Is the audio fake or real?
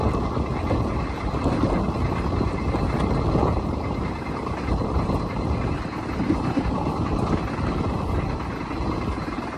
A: real